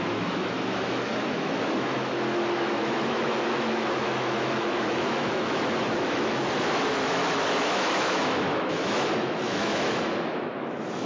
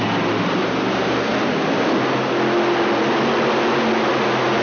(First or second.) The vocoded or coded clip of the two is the first